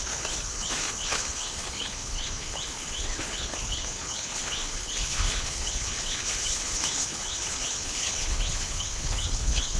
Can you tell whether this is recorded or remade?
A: remade